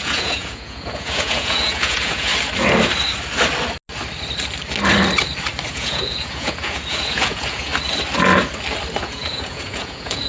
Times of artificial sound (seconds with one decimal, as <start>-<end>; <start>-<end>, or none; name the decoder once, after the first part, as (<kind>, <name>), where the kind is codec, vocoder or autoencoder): 0.0-2.3 (vocoder, Vocos); 5.7-7.7; 9.0-10.3